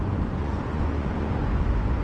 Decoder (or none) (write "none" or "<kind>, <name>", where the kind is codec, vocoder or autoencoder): vocoder, Vocos